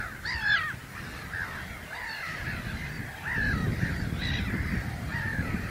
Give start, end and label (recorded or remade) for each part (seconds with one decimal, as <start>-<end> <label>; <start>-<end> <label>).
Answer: 0.0-5.1 recorded; 5.1-5.7 remade